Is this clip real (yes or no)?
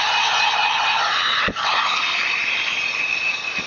no